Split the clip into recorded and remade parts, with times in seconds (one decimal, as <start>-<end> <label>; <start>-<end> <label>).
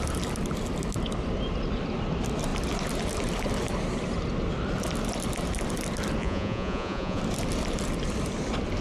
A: 0.0-6.2 recorded; 6.2-7.2 remade; 7.2-8.8 recorded